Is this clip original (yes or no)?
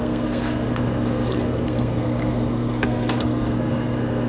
no